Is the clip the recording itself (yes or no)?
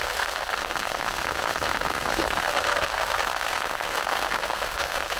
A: no